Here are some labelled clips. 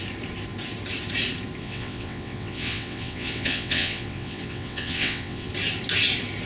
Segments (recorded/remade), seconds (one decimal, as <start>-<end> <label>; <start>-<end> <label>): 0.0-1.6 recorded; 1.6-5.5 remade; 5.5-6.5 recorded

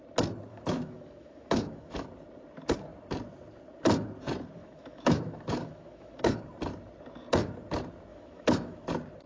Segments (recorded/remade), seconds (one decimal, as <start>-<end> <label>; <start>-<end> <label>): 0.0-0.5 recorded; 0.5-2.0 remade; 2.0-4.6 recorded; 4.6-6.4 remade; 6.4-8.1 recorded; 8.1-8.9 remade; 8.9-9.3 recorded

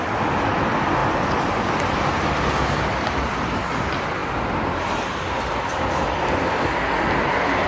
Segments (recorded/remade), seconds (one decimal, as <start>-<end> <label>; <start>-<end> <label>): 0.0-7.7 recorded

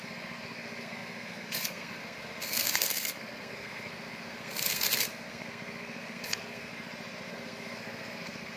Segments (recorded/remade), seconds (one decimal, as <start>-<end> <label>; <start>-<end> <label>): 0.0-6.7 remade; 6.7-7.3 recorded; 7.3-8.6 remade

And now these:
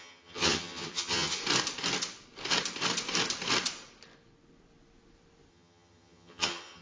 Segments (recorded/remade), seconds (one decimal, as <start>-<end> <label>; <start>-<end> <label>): 0.0-1.4 remade; 1.4-5.5 recorded; 5.5-6.8 remade

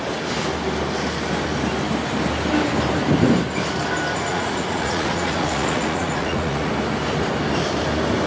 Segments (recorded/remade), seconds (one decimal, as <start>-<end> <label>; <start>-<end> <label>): 0.0-4.3 recorded; 4.3-6.7 remade; 6.7-8.3 recorded